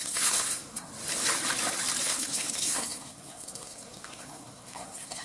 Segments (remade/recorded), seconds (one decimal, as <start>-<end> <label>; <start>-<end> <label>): 0.0-0.9 remade; 0.9-2.0 recorded; 2.0-5.2 remade